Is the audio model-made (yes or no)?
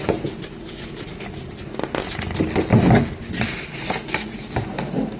no